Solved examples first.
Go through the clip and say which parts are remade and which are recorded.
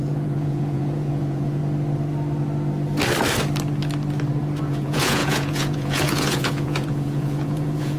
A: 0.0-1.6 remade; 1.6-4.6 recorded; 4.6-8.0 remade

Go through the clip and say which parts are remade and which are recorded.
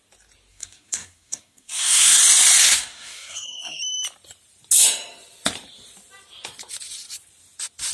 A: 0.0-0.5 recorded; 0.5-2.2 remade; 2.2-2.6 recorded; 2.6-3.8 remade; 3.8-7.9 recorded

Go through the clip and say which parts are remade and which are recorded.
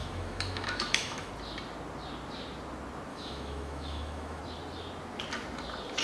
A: 0.0-1.3 remade; 1.3-3.1 recorded; 3.1-4.4 remade; 4.4-6.0 recorded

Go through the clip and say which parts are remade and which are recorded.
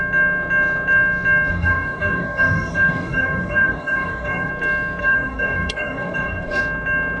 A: 0.0-1.5 recorded; 1.5-4.5 remade; 4.5-5.0 recorded; 5.0-6.6 remade; 6.6-7.2 recorded